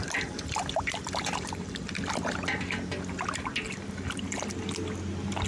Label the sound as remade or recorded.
recorded